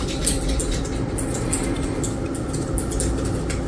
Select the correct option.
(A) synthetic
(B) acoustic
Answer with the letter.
B